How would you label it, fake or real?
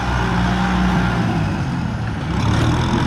real